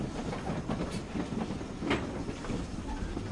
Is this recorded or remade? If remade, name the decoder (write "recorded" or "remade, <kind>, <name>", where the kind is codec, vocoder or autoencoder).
recorded